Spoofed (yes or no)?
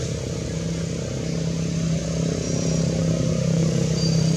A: no